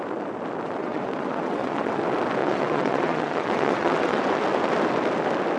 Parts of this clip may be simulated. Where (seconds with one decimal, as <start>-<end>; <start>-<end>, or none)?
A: 0.8-2.0; 2.4-4.2